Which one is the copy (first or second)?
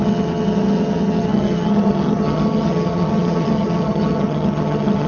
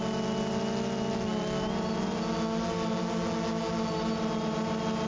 first